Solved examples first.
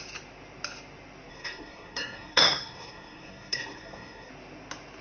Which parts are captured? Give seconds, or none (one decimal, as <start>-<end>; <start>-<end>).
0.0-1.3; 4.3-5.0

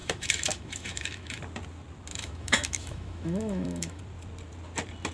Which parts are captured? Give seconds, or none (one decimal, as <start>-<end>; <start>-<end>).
1.4-2.1; 4.0-5.1

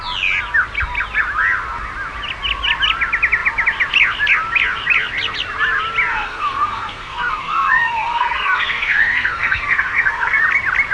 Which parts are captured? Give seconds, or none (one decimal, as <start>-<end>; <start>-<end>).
0.0-6.1; 10.4-10.9